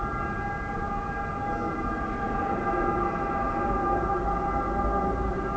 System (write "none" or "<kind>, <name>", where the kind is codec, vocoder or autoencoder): none